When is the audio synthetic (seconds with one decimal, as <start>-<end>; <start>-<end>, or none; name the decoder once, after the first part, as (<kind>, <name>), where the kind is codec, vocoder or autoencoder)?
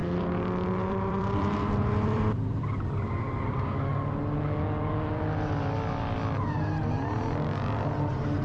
0.9-3.7 (vocoder, BigVGAN v2)